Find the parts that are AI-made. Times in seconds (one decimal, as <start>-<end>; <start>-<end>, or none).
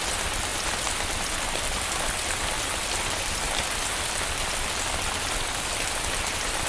none